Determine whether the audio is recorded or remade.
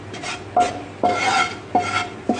recorded